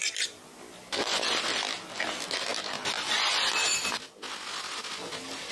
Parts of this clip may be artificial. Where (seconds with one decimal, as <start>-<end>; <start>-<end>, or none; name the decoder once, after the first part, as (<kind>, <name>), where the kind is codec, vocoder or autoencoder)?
none